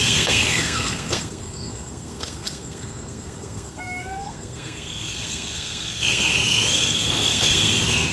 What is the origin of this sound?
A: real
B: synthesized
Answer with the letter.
B